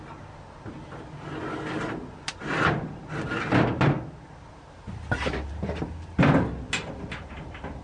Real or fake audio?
real